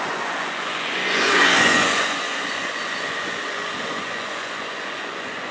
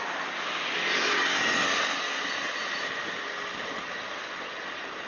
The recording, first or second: second